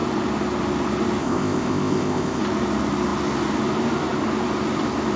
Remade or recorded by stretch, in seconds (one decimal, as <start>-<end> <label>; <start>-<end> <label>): 0.0-1.2 recorded; 1.2-2.4 remade; 2.4-5.2 recorded